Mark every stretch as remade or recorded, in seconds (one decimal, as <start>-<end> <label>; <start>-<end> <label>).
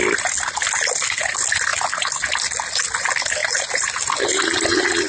0.0-5.1 recorded